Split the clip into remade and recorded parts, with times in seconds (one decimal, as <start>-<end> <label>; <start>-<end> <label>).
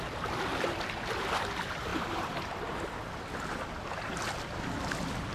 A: 0.0-5.3 recorded